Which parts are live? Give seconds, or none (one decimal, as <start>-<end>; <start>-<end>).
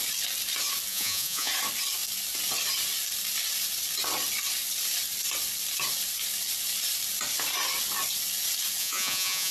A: 0.0-0.9; 1.5-8.8